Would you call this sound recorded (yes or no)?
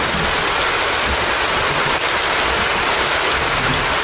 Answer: yes